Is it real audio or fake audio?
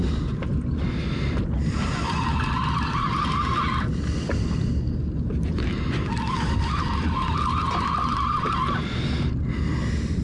real